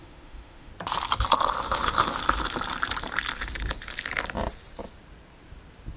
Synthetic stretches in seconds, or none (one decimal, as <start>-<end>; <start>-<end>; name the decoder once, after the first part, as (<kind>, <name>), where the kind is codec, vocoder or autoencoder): 0.0-0.7 (autoencoder, DAC-VAE); 1.6-2.2